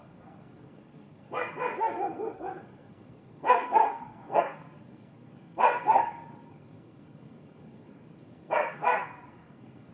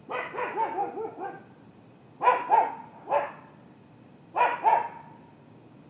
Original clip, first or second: second